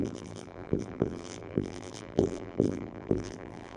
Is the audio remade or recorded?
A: remade